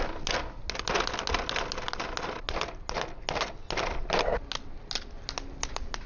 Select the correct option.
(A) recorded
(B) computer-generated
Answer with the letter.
A